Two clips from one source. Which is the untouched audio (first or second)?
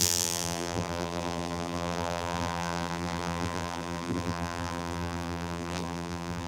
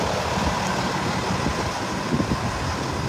second